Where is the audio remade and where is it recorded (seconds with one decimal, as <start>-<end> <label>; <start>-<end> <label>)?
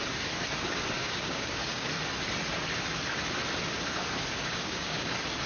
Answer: 0.0-1.0 recorded; 1.0-1.9 remade; 1.9-4.4 recorded; 4.4-5.1 remade; 5.1-5.5 recorded